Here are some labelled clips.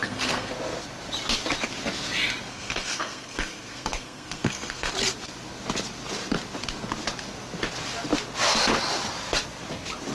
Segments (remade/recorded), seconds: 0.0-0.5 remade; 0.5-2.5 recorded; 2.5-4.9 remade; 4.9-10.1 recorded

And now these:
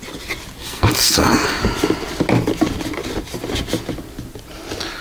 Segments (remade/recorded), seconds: 0.0-0.6 recorded; 0.6-1.6 remade; 1.6-5.0 recorded

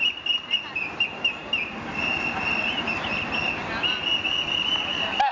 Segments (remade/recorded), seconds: 0.0-5.3 recorded

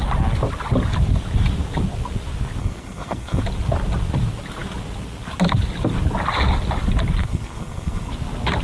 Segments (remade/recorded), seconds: 0.0-2.6 recorded; 2.6-3.4 remade; 3.4-7.2 recorded; 7.2-8.1 remade; 8.1-8.6 recorded

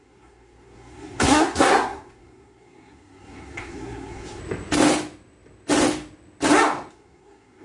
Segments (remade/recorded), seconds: 0.0-4.4 remade; 4.4-6.9 recorded; 6.9-7.6 remade

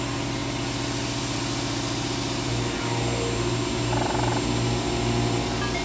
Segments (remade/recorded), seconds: 0.0-5.8 recorded